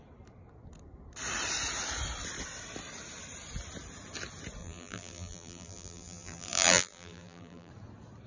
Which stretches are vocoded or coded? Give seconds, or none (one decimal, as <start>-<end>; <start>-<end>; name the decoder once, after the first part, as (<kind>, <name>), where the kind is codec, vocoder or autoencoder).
4.6-7.7 (vocoder, BigVGAN v2)